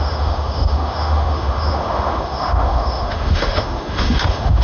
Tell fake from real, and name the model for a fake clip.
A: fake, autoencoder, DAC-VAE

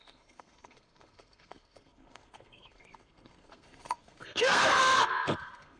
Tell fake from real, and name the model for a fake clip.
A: fake, codec, SNAC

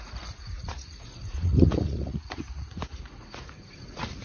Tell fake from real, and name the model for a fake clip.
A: fake, vocoder, Vocos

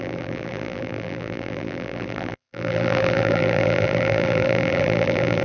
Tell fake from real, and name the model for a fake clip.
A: fake, vocoder, BigVGAN v2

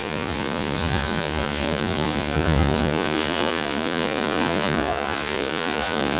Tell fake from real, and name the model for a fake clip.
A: fake, vocoder, Vocos